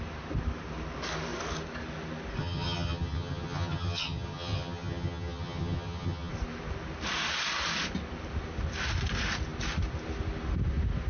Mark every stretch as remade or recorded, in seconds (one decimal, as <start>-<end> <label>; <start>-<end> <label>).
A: 0.0-2.4 recorded; 2.4-6.3 remade; 6.3-11.1 recorded